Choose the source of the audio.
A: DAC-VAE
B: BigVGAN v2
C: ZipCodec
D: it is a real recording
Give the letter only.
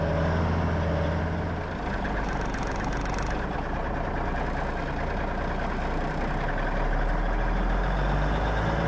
D